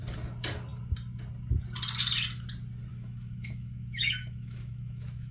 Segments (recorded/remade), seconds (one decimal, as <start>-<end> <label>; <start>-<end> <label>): 0.0-2.9 recorded; 2.9-5.3 remade